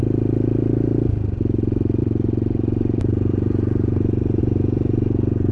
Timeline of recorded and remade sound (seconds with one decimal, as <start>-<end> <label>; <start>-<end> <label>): 0.0-2.0 recorded; 2.0-4.4 remade; 4.4-5.5 recorded